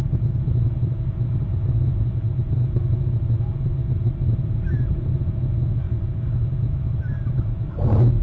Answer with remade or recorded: recorded